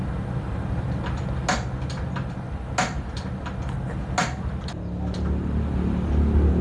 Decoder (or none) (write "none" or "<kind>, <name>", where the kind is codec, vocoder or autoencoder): none